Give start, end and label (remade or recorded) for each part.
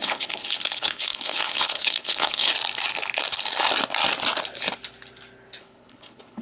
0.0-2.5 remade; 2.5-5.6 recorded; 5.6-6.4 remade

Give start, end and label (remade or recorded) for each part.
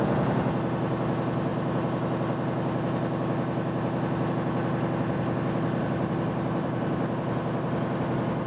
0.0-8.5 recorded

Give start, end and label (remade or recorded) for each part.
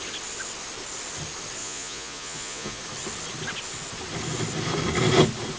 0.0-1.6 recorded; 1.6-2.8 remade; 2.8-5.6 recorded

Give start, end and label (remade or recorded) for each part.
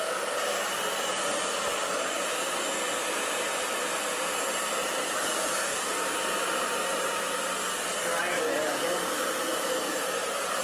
0.0-3.0 recorded; 3.0-7.2 remade; 7.2-9.5 recorded; 9.5-10.6 remade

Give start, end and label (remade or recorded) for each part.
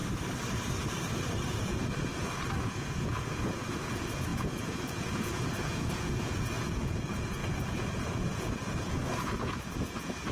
0.0-1.5 recorded; 1.5-2.1 remade; 2.1-2.6 recorded; 2.6-10.3 remade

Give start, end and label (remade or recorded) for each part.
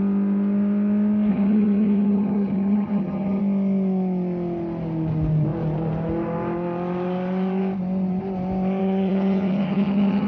0.0-1.3 recorded; 1.3-3.4 remade; 3.4-8.8 recorded; 8.8-10.3 remade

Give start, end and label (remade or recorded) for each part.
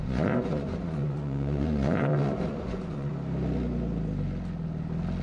0.0-3.1 remade; 3.1-5.2 recorded